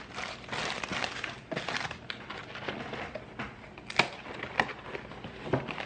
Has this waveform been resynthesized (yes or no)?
no